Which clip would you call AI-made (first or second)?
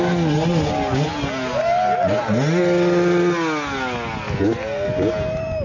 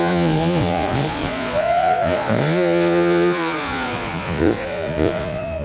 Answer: second